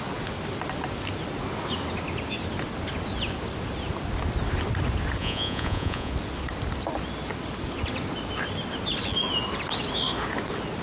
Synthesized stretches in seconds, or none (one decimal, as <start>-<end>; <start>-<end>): 5.2-6.1